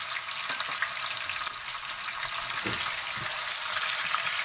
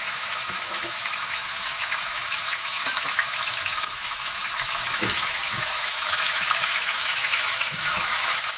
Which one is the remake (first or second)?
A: second